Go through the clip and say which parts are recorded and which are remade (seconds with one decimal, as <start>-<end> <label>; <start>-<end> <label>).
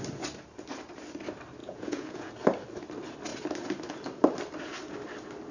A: 0.0-1.6 recorded; 1.6-2.3 remade; 2.3-5.5 recorded